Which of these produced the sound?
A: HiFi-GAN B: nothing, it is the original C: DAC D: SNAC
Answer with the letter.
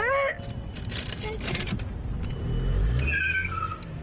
B